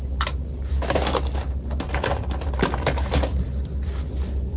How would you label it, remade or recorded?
recorded